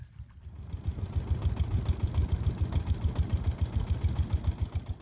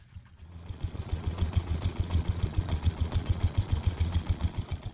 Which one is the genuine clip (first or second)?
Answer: first